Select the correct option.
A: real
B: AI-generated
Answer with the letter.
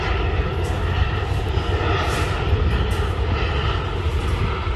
A